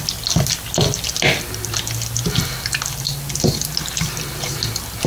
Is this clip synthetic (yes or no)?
no